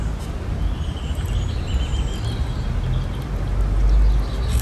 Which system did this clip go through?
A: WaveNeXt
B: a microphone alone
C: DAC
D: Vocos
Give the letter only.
B